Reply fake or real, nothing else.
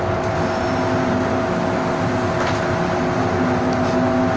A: real